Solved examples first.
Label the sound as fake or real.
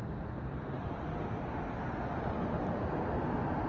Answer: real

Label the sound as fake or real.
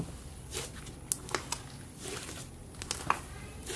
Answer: real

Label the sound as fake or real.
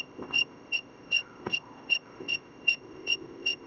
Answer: fake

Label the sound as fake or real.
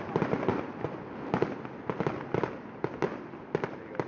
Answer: real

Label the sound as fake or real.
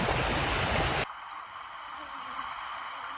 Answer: real